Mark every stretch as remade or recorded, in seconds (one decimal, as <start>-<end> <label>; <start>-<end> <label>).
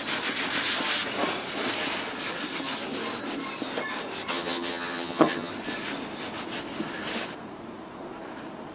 0.0-4.3 recorded; 4.3-5.5 remade; 5.5-8.7 recorded